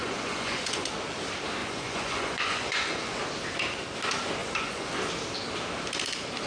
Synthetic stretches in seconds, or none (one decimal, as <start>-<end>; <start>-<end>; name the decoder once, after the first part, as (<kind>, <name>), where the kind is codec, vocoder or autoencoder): 0.0-0.9 (vocoder, Vocos); 1.6-3.2; 4.4-5.0